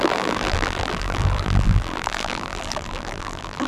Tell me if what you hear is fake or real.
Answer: fake